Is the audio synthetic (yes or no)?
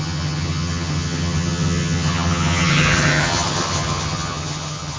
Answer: yes